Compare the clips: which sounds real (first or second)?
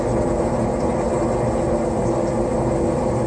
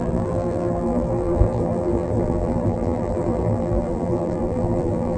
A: first